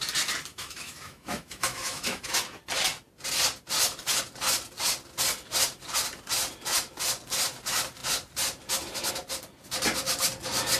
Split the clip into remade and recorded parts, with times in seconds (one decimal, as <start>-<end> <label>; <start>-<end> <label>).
0.0-0.5 recorded; 0.5-2.4 remade; 2.4-10.8 recorded